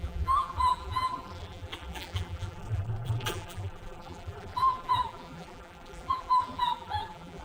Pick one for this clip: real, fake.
fake